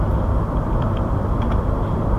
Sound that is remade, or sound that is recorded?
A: recorded